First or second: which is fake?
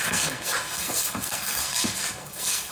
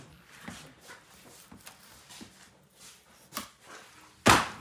first